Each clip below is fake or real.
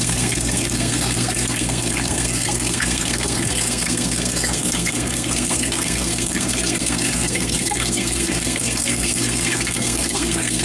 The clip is fake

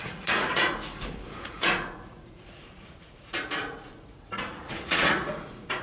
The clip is fake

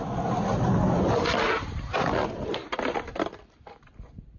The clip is real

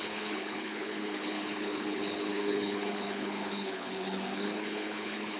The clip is fake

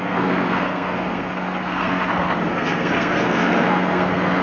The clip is fake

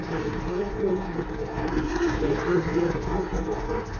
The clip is fake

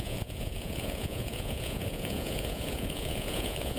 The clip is fake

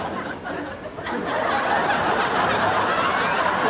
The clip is real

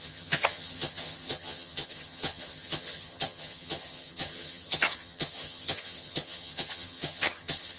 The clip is fake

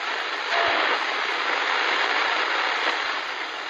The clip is real